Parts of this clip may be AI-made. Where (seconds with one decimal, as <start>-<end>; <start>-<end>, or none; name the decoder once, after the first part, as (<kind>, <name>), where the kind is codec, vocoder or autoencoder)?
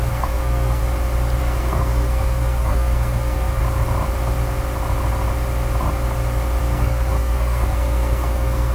0.0-0.8 (codec, SNAC); 1.4-3.6; 6.6-8.7